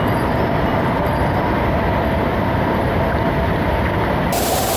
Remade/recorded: recorded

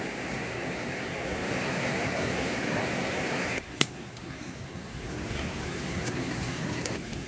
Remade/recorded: remade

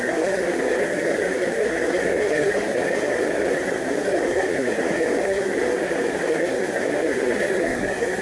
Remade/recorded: remade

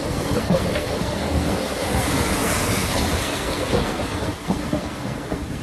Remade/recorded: remade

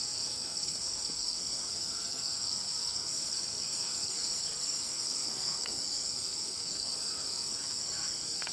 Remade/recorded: remade